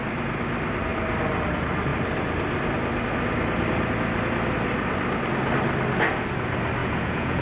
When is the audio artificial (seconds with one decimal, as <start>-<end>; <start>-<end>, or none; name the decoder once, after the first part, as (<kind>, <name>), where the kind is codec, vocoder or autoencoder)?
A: 6.8-7.4 (vocoder, Vocos)